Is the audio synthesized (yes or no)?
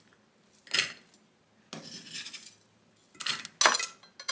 no